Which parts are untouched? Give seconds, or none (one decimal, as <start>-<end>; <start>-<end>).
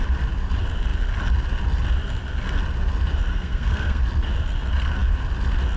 0.0-3.3; 4.0-5.8